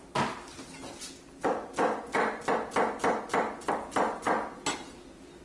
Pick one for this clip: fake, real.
real